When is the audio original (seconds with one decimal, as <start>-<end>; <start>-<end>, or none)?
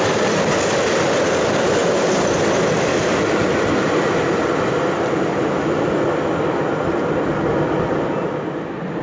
0.0-9.0